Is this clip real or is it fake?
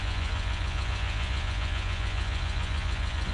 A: fake